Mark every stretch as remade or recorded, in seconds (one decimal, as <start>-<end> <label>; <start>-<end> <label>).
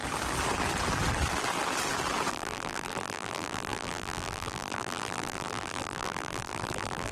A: 0.0-2.3 recorded; 2.3-7.1 remade